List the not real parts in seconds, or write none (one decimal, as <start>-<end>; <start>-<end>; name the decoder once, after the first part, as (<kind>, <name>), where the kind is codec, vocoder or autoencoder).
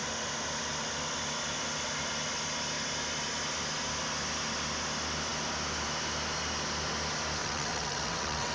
7.4-8.5 (vocoder, WaveNeXt)